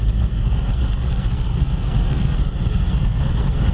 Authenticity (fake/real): fake